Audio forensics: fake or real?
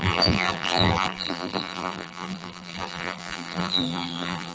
fake